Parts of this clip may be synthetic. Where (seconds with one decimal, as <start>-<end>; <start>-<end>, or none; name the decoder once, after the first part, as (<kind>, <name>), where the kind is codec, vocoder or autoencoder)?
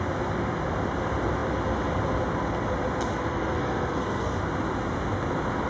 3.3-4.4 (codec, SNAC)